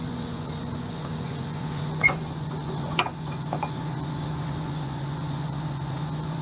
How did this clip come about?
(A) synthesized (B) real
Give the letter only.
A